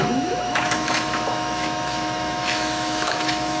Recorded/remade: remade